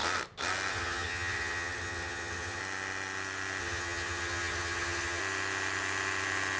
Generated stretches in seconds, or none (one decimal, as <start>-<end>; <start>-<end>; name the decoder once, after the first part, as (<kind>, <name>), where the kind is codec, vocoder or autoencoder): 0.7-2.6 (vocoder, HiFi-GAN); 3.6-5.2